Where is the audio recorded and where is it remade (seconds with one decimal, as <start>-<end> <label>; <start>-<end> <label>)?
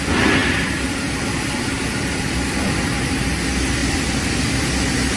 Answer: 0.0-0.4 recorded; 0.4-3.2 remade; 3.2-3.8 recorded; 3.8-4.3 remade; 4.3-5.2 recorded